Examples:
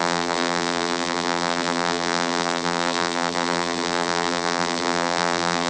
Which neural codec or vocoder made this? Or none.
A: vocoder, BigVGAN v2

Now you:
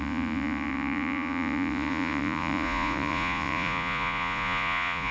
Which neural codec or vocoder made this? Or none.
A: vocoder, Vocos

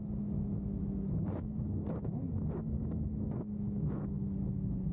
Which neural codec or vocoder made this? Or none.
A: autoencoder, DAC-VAE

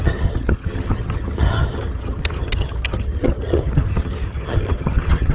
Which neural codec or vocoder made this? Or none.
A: vocoder, HiFi-GAN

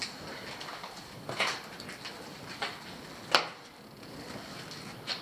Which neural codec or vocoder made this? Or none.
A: none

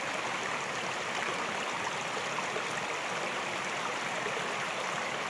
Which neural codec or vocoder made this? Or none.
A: none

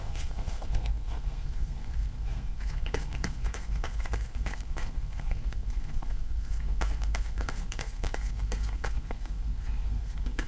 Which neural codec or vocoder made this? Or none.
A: codec, SNAC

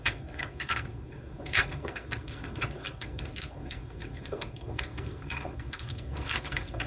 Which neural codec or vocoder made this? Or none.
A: codec, SNAC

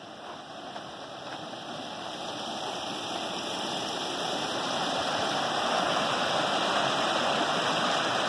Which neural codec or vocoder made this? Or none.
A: none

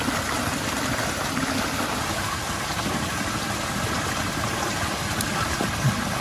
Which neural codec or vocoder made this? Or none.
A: none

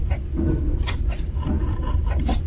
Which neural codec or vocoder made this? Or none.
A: vocoder, BigVGAN v2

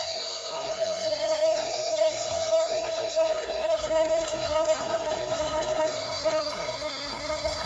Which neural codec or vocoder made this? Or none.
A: codec, SNAC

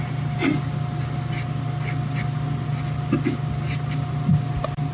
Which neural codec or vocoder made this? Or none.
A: none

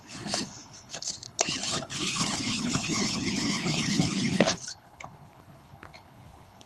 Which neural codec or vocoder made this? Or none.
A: codec, HILCodec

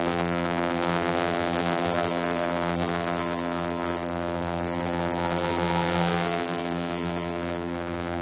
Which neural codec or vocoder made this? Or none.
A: vocoder, BigVGAN v2